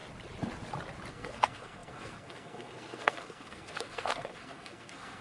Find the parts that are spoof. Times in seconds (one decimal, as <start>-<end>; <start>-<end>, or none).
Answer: 1.1-5.2